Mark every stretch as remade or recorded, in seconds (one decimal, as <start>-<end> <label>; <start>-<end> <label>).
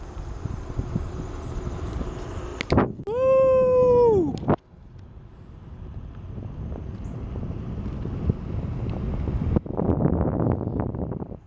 0.0-11.5 recorded